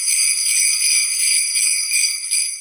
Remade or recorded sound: remade